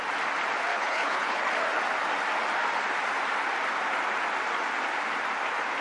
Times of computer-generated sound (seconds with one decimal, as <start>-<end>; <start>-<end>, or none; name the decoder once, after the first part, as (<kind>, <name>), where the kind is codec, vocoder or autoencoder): 0.7-1.5 (codec, HILCodec)